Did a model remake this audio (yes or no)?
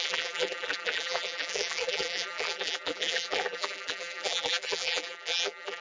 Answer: yes